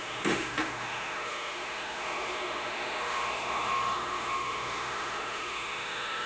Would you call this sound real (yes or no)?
no